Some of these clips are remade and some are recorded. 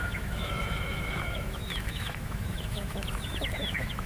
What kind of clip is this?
remade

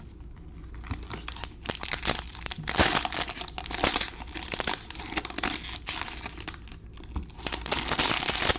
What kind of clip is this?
recorded